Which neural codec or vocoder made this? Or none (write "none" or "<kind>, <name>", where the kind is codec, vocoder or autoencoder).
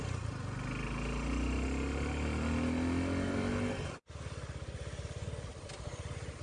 none